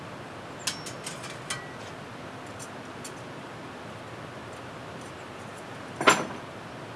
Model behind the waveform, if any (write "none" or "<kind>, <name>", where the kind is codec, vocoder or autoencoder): none